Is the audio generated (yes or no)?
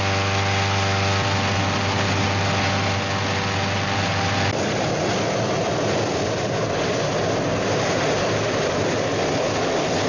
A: no